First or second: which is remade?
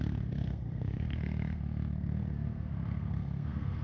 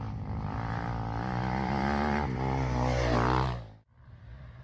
first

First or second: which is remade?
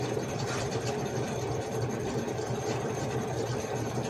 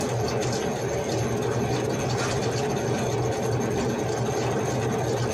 first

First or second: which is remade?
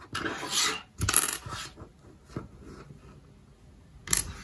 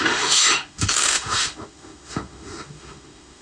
second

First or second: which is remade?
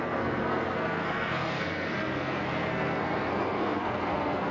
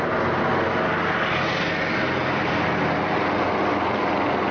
first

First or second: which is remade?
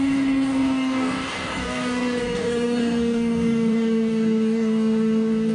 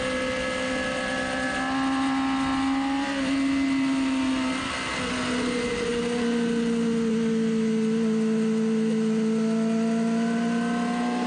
first